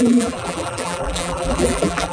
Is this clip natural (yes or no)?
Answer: no